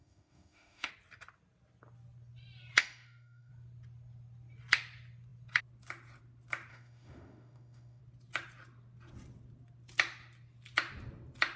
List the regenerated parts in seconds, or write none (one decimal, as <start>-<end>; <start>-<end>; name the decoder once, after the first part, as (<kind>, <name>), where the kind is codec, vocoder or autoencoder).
0.0-0.9 (autoencoder, DAC-VAE); 2.8-3.5; 6.7-8.0